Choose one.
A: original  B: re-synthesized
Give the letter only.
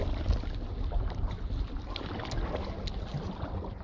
A